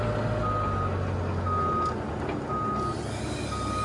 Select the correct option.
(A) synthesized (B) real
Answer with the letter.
B